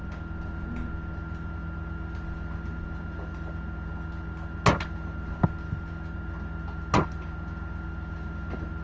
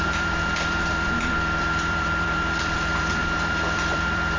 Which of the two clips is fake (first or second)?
second